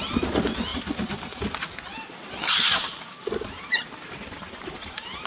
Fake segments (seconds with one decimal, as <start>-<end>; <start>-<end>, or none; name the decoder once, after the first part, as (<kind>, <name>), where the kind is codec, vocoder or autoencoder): 0.7-1.4 (vocoder, BigVGAN v2); 1.9-5.3